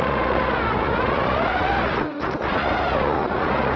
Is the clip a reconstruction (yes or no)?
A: yes